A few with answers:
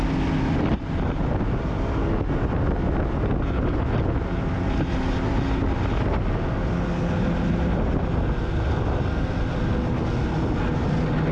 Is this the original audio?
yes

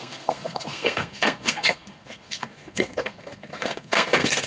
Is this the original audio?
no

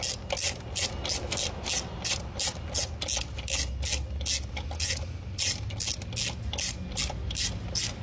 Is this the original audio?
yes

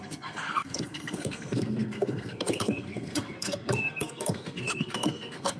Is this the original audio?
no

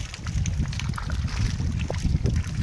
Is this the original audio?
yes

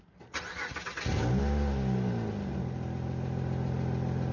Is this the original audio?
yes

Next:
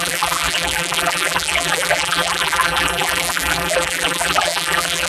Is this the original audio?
no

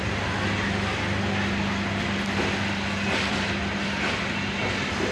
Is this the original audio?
yes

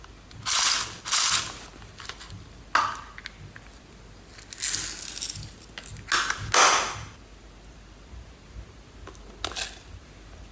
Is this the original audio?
yes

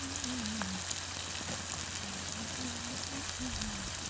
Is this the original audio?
yes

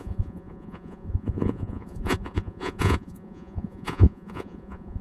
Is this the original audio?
no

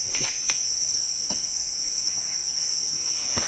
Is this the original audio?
no